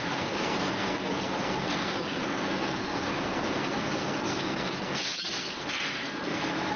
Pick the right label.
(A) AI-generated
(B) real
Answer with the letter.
A